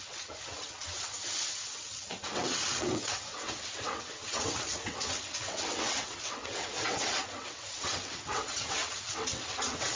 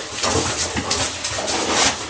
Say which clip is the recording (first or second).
second